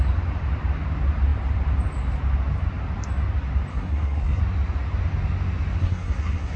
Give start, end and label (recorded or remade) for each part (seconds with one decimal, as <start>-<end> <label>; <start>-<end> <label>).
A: 0.0-3.7 recorded; 3.7-4.4 remade; 4.4-5.8 recorded; 5.8-6.6 remade